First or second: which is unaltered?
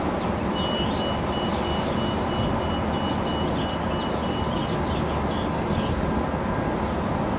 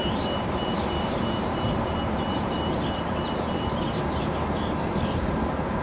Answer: first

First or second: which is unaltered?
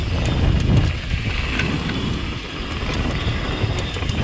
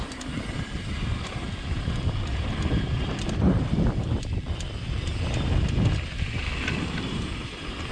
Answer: first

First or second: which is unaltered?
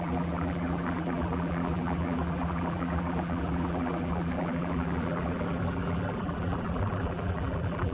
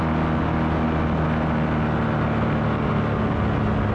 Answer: second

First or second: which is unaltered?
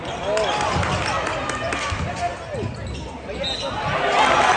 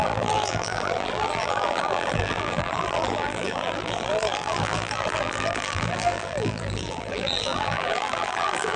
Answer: first